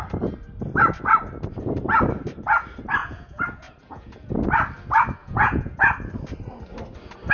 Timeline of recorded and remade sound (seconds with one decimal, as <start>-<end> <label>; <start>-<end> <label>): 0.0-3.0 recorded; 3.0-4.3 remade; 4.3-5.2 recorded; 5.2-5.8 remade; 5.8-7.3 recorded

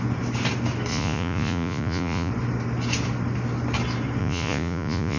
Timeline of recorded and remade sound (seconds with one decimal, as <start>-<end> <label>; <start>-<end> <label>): 0.0-0.9 recorded; 0.9-2.3 remade; 2.3-4.2 recorded; 4.2-5.2 remade

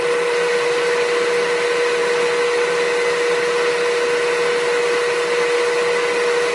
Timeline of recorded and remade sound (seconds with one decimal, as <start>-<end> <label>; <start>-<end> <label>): 0.0-6.5 recorded

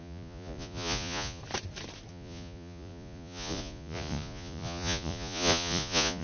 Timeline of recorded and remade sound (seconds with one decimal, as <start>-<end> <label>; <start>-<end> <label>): 0.0-1.4 remade; 1.4-2.1 recorded; 2.1-6.2 remade

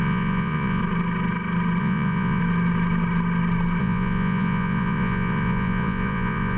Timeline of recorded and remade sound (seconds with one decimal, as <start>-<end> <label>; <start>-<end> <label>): 0.0-0.8 remade; 0.8-1.8 recorded; 1.8-2.4 remade; 2.4-3.8 recorded; 3.8-6.6 remade

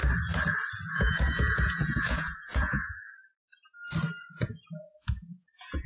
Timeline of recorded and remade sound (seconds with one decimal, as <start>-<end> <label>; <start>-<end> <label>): 0.0-0.9 recorded; 0.9-3.3 remade; 3.3-4.2 recorded; 4.2-5.9 remade

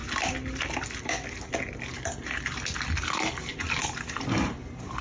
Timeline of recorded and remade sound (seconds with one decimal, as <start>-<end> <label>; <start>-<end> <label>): 0.0-5.0 recorded